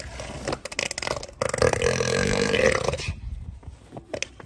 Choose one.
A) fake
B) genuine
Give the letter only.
B